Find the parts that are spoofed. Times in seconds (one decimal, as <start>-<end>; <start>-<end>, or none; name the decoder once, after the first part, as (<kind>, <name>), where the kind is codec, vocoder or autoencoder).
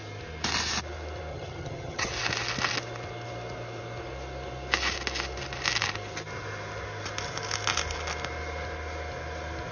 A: 1.3-2.1 (vocoder, HiFi-GAN)